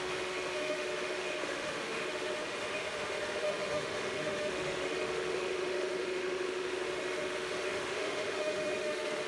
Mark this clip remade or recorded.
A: remade